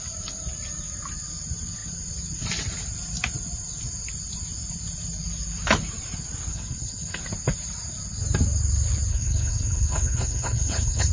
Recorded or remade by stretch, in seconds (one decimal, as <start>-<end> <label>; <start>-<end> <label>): 0.0-6.5 recorded; 6.5-7.2 remade; 7.2-9.1 recorded; 9.1-11.1 remade